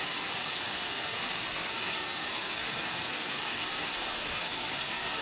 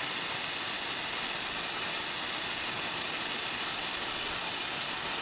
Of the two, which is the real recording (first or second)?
second